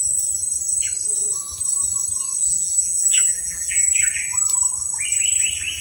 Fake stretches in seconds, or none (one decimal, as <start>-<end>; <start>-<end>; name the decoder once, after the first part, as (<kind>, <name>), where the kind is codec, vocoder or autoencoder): 2.4-3.8 (vocoder, BigVGAN v2)